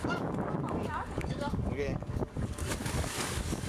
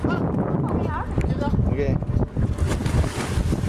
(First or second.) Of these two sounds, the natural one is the second